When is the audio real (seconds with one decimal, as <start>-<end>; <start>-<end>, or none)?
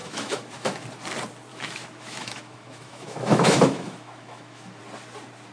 0.8-1.5; 4.8-5.5